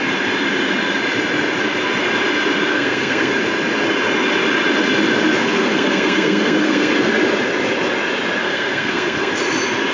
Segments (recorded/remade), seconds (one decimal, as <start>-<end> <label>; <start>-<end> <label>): 0.0-2.7 recorded; 2.7-3.3 remade; 3.3-5.4 recorded; 5.4-6.9 remade; 6.9-8.4 recorded; 8.4-9.3 remade; 9.3-9.9 recorded